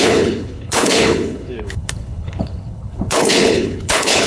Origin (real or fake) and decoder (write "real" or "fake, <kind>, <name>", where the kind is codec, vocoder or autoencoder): fake, codec, HILCodec